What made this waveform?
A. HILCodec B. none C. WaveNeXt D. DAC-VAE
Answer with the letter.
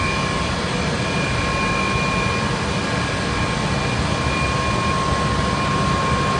B